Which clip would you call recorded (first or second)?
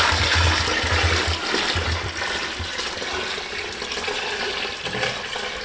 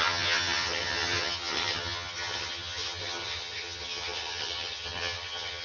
first